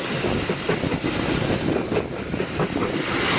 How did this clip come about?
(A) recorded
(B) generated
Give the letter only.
A